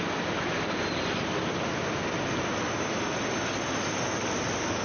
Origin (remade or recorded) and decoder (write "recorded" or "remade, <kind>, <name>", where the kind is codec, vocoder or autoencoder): recorded